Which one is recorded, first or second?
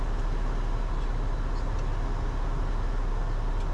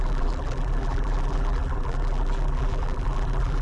first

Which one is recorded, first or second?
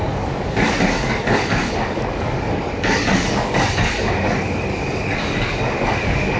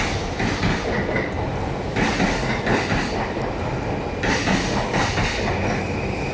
second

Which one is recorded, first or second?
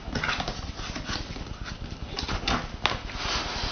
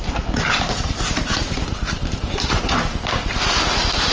first